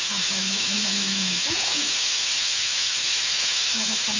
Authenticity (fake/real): fake